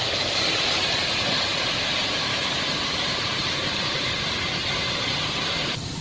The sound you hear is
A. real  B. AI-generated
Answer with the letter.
B